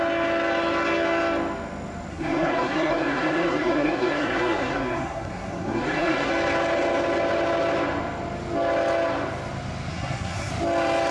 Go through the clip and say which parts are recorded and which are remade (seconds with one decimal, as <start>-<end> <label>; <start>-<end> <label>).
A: 0.0-2.1 recorded; 2.1-6.3 remade; 6.3-9.9 recorded; 9.9-10.5 remade; 10.5-11.1 recorded

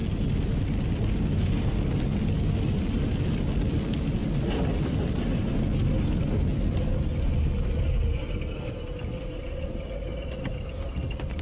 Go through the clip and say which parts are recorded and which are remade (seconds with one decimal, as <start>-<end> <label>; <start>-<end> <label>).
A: 0.0-11.4 recorded

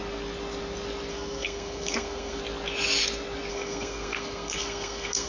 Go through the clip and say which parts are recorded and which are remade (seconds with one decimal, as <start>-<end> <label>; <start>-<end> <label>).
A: 0.0-1.1 recorded; 1.1-2.4 remade; 2.4-3.5 recorded; 3.5-5.3 remade